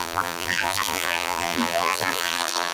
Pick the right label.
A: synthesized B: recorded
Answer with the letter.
A